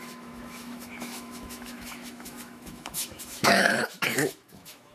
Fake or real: fake